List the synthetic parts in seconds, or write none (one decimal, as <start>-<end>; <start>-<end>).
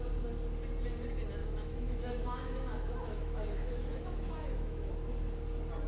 1.4-4.9